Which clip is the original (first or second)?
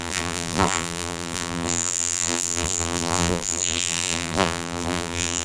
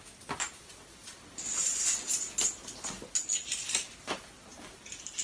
second